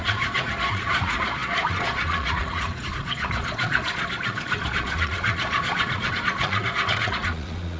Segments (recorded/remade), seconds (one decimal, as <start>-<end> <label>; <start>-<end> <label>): 0.0-7.8 remade